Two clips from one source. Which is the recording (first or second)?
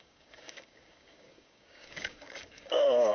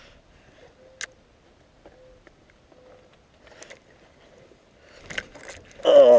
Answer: second